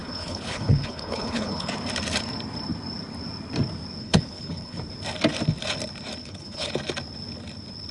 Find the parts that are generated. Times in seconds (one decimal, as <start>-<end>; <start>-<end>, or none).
0.0-1.7; 4.0-4.8; 6.2-6.7